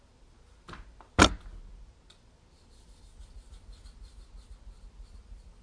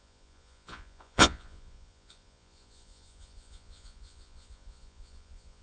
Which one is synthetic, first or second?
second